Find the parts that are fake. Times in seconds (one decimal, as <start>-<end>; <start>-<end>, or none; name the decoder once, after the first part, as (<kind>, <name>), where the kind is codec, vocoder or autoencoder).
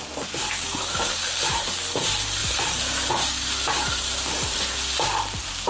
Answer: 0.0-5.7 (vocoder, BigVGAN v2)